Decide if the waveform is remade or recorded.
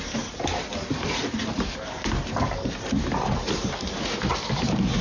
recorded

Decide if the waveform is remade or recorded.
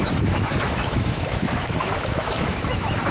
remade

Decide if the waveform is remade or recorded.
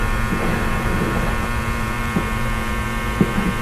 remade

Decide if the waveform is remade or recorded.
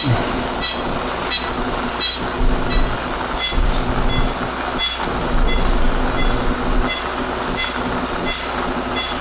recorded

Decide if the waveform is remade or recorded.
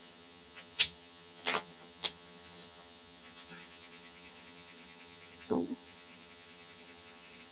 remade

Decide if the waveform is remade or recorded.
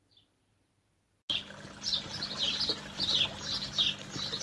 recorded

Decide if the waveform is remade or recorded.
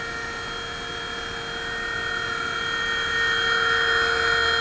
recorded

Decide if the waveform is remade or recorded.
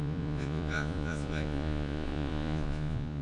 remade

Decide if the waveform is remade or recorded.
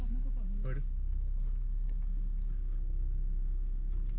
recorded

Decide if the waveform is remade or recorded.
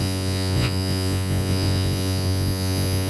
remade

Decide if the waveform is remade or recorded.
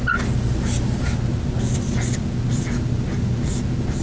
recorded